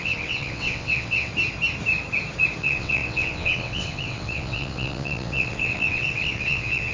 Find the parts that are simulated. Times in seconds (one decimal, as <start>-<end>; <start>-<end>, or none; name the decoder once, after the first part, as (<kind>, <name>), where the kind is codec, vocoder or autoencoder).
0.0-1.3 (vocoder, WaveNeXt); 2.6-6.9